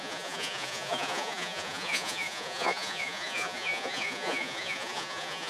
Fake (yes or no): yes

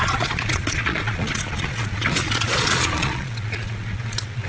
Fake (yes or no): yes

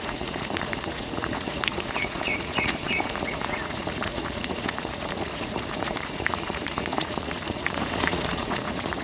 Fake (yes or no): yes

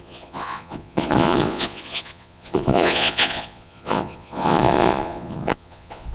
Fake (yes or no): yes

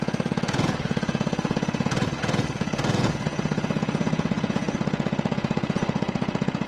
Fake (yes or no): yes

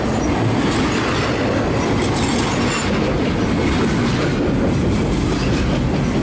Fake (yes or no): no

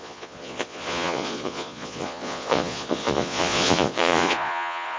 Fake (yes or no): yes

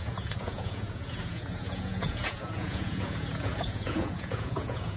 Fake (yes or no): yes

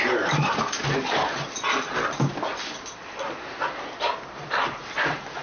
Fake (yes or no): no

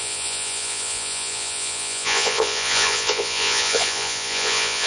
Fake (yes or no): yes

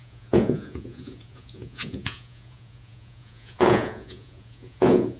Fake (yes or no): yes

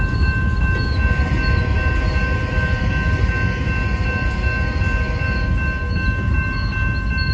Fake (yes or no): no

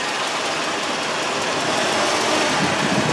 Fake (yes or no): no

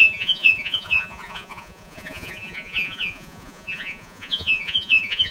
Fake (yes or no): yes